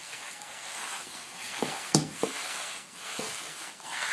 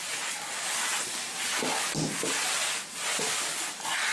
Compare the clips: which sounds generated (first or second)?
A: first